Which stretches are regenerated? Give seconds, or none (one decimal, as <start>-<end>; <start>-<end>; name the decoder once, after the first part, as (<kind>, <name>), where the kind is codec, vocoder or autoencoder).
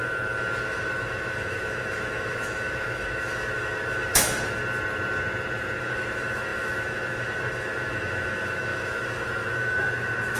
0.0-4.6 (autoencoder, DAC-VAE); 5.8-10.4